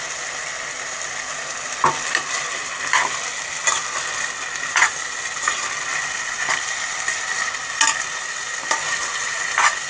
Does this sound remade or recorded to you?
recorded